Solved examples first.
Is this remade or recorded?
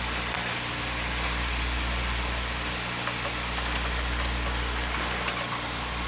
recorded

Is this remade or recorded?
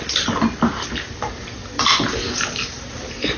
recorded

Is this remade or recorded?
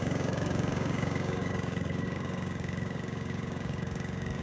remade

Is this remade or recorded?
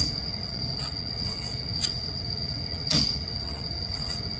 remade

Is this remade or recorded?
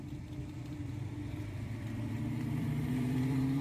remade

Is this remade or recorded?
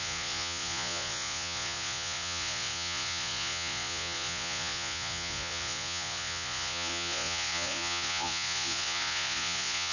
remade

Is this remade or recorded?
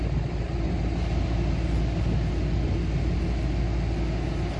recorded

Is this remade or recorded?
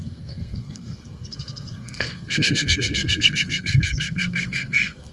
remade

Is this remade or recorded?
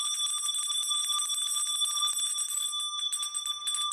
recorded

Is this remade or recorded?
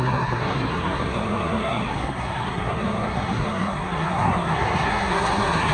remade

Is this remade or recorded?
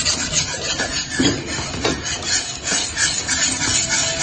recorded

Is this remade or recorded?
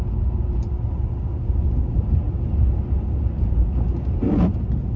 recorded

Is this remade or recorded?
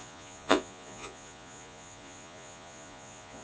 remade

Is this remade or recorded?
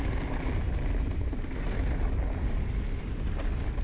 recorded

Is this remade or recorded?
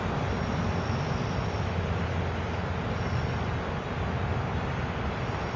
recorded